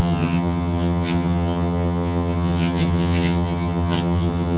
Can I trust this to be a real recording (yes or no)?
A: no